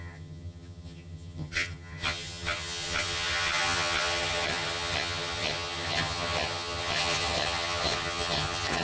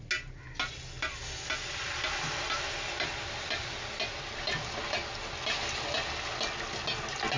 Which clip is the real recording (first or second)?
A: second